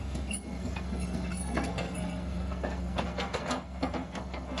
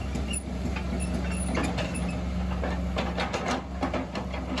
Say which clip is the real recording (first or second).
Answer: second